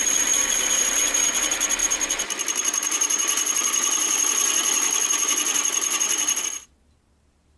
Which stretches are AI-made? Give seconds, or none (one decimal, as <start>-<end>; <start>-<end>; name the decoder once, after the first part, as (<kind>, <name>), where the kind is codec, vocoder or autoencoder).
none